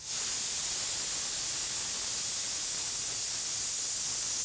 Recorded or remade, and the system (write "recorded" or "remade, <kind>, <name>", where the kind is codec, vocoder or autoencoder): recorded